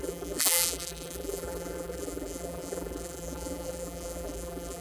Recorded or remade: remade